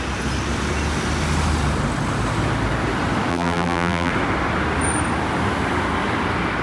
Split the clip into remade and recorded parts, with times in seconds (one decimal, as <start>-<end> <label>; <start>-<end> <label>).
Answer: 0.0-3.3 recorded; 3.3-4.1 remade; 4.1-6.6 recorded